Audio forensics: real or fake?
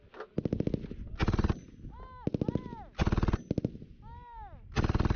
real